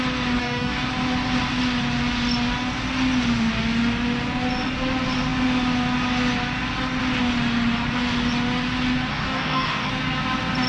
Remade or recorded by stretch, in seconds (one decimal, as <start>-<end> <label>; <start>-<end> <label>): 0.0-0.4 recorded; 0.4-0.9 remade; 0.9-9.1 recorded; 9.1-9.9 remade; 9.9-10.7 recorded